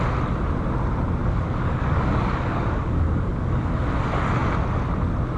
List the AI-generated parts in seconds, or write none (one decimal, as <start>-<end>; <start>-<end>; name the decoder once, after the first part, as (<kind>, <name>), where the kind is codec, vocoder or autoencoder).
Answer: 1.2-3.8 (codec, DAC)